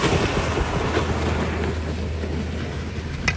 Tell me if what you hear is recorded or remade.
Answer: recorded